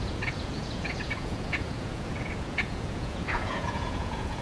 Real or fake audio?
fake